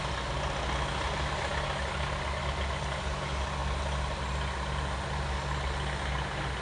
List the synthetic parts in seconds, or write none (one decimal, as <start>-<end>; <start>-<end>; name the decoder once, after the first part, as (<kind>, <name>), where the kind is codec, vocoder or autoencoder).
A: none